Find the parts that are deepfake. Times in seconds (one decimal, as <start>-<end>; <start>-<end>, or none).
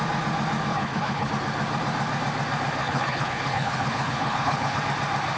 0.7-1.3; 2.8-4.8